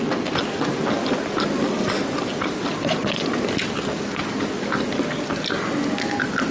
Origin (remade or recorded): recorded